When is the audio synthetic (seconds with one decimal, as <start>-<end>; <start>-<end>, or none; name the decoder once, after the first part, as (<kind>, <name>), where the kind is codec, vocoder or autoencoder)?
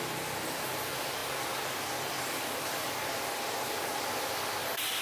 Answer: none